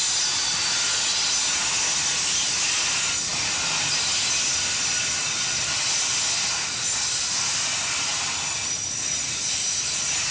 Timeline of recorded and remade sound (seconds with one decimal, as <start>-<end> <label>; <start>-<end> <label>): 0.0-10.3 recorded